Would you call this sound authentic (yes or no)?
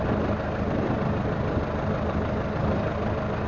yes